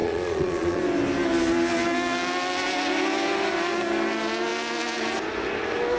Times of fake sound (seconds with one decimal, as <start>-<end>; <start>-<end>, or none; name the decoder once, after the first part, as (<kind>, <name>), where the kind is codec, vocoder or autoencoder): 0.0-0.8 (vocoder, Vocos)